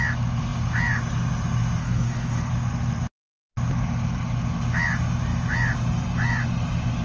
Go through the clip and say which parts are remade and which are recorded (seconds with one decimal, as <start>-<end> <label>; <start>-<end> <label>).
0.0-1.8 recorded; 1.8-2.5 remade; 2.5-7.0 recorded